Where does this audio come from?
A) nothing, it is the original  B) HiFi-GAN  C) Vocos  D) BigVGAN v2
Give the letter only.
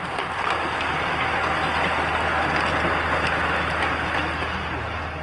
A